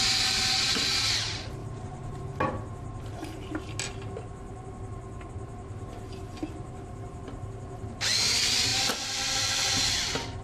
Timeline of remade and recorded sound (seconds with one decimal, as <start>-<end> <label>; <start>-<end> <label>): 0.0-1.6 recorded; 1.6-2.2 remade; 2.2-10.4 recorded